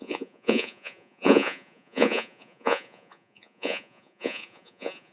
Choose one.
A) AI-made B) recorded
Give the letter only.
A